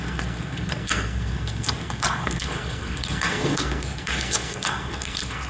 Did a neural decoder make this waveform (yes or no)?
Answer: yes